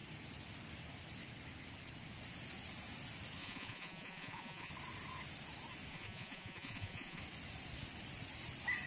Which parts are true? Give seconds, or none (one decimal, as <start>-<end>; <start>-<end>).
0.0-3.4; 4.7-5.9; 7.2-8.9